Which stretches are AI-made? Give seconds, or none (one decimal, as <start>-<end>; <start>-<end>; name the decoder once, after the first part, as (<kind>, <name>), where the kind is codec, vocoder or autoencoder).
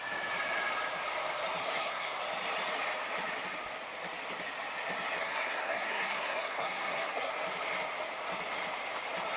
1.6-2.2 (codec, SNAC); 5.2-7.3